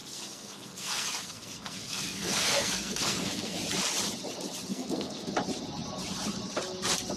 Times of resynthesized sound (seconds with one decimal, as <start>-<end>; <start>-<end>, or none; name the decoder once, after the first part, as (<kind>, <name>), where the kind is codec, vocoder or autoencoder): 0.0-3.6 (codec, SNAC); 4.7-5.3